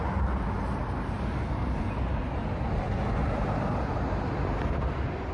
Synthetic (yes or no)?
no